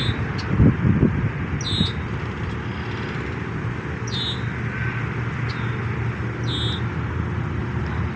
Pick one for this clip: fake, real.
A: real